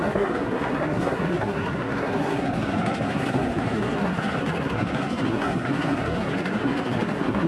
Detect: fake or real fake